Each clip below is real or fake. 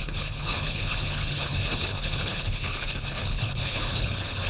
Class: fake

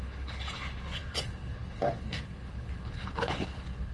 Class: fake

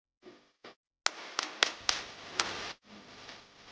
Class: real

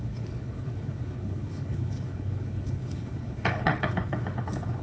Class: fake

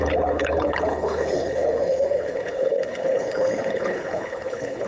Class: fake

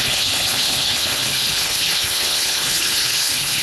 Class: fake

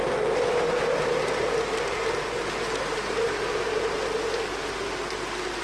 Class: real